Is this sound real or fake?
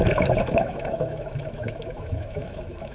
fake